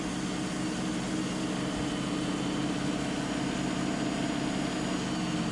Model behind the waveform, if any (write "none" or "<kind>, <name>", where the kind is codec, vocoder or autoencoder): none